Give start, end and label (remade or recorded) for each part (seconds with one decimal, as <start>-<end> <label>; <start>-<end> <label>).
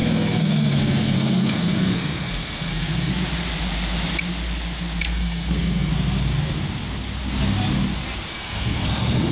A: 0.0-3.1 remade; 3.1-5.0 recorded; 5.0-5.9 remade; 5.9-8.3 recorded; 8.3-9.3 remade